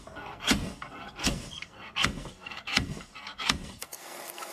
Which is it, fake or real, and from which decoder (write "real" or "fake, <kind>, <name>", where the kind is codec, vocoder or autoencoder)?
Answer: fake, codec, SNAC